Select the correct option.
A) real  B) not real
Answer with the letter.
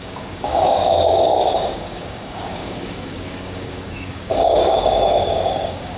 B